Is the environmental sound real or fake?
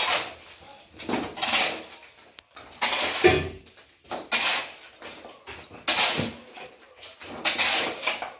real